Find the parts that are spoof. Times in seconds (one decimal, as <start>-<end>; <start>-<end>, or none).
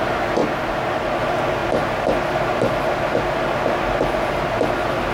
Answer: none